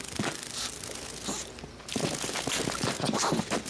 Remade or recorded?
recorded